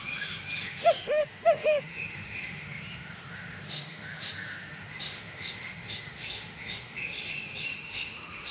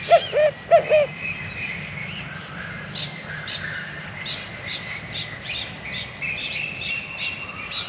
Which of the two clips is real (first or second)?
second